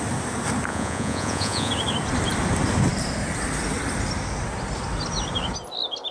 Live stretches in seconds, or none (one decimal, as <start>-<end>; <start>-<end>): 0.0-0.7; 1.7-6.1